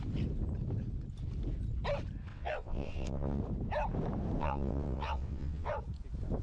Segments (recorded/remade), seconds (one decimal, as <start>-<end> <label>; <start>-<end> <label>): 0.0-2.3 recorded; 2.3-3.4 remade; 3.4-4.4 recorded; 4.4-5.7 remade; 5.7-6.4 recorded